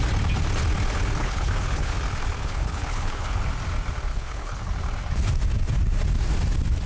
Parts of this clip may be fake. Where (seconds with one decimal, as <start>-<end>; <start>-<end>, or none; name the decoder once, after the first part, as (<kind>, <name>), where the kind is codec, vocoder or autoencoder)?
1.2-2.0 (codec, HILCodec); 2.4-3.4; 4.1-4.7